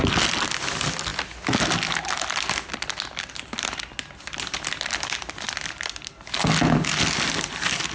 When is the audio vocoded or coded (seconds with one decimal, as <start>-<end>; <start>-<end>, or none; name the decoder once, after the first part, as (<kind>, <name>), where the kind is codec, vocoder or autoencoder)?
none